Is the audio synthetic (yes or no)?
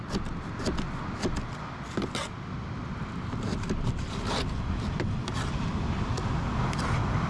no